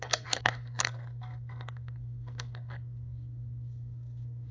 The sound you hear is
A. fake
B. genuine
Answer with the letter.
A